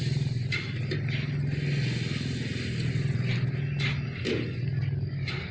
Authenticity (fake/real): real